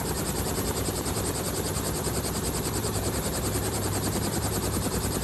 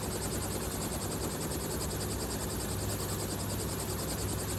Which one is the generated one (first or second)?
first